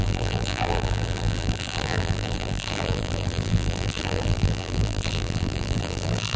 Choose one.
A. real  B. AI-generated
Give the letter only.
B